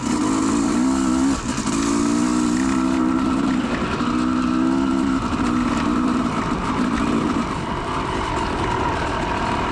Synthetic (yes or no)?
no